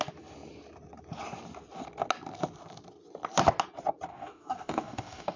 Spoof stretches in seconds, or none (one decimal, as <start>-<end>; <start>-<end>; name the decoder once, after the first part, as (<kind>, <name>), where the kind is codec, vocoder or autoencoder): 4.1-5.4 (codec, DAC)